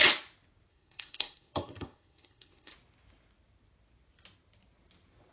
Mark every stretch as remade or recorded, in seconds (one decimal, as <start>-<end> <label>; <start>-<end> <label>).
0.0-0.7 recorded; 0.7-2.7 remade; 2.7-5.3 recorded